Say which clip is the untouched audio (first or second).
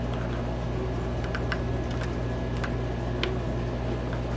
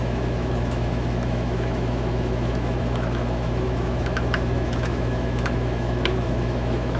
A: first